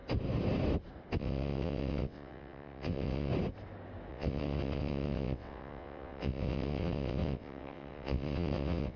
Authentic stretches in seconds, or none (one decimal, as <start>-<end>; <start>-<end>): 0.0-1.2; 3.3-4.1